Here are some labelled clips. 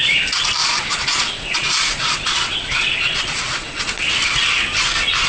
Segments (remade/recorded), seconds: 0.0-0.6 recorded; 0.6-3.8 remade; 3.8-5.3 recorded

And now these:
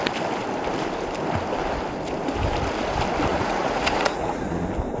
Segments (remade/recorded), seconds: 0.0-3.3 recorded; 3.3-4.4 remade; 4.4-5.0 recorded

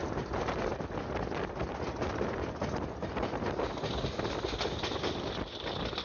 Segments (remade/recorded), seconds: 0.0-6.0 recorded

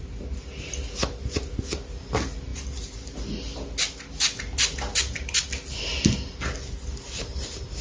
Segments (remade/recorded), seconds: 0.0-7.8 recorded

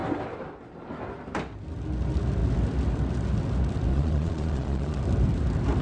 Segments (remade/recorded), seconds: 0.0-3.9 recorded; 3.9-5.0 remade; 5.0-5.8 recorded